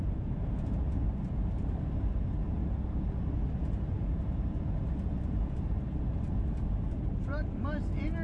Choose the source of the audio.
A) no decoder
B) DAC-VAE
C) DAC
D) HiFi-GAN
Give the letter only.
A